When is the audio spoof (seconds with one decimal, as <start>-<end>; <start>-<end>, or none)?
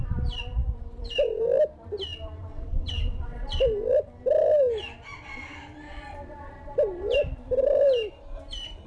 2.5-3.6